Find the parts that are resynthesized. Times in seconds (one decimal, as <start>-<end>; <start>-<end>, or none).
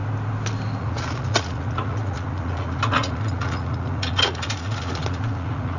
0.8-5.8